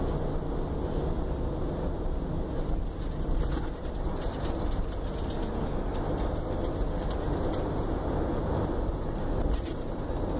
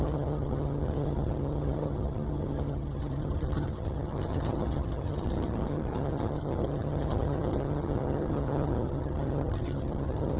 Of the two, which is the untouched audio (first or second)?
first